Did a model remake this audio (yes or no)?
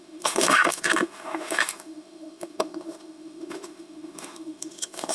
yes